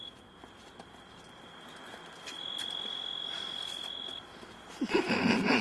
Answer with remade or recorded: recorded